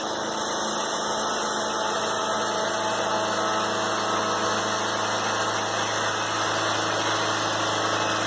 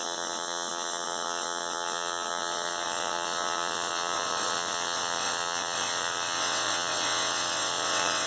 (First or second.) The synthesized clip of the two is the second